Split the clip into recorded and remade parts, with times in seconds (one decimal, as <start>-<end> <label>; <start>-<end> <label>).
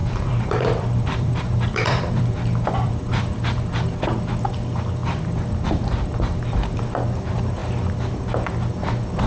0.0-4.2 remade; 4.2-5.0 recorded; 5.0-6.8 remade; 6.8-9.3 recorded